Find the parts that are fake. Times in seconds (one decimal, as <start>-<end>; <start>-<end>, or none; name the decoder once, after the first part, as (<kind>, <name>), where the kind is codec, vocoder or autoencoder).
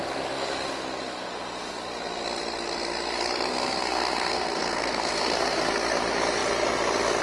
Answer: 3.5-5.7 (codec, SNAC)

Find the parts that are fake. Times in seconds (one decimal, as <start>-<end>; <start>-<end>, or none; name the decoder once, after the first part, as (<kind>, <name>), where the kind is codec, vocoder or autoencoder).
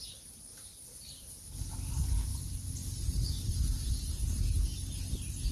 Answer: none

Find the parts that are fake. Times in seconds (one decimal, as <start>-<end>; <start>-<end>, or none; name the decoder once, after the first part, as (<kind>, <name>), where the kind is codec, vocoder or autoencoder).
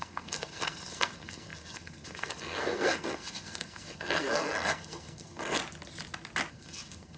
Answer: 0.0-5.6 (codec, SNAC); 6.5-7.2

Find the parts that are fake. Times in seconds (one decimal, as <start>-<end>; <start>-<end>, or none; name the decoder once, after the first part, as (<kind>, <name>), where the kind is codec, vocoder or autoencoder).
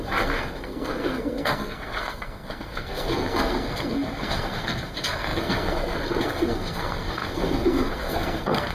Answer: 0.0-8.7 (codec, SNAC)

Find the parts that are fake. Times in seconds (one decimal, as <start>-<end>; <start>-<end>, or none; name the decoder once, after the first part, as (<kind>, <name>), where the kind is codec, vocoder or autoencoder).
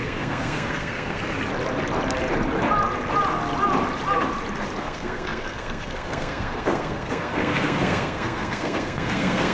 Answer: 0.0-1.2 (codec, SNAC); 4.8-9.5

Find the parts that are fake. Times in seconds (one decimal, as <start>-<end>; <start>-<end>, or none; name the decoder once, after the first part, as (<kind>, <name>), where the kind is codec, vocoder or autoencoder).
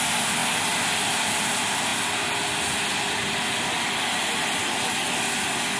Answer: none